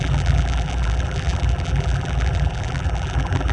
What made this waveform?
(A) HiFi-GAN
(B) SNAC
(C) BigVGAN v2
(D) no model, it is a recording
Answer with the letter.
C